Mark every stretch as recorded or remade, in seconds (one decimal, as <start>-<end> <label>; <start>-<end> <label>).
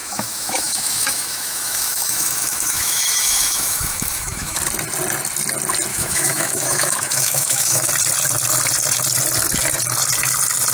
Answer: 0.0-4.6 remade; 4.6-5.9 recorded; 5.9-7.9 remade; 7.9-10.7 recorded